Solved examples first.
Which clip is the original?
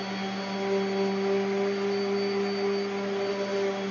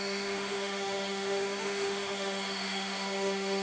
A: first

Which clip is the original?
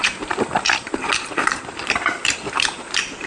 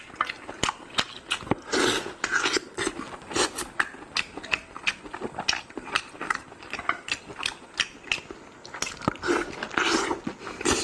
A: second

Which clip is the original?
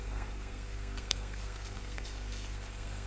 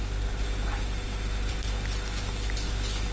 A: second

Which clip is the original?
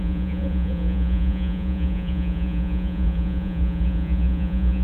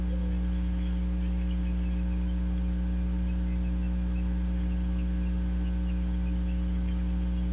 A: second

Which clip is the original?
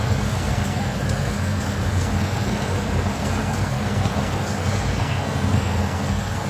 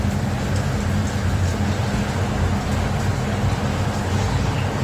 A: second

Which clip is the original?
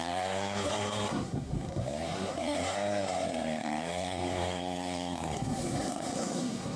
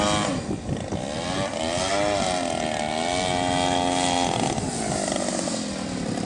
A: second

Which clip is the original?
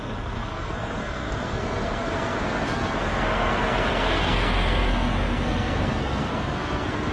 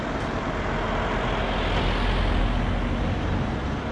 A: second